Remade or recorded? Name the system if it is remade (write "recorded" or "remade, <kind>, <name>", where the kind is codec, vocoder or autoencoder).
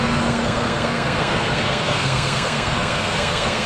remade, codec, SNAC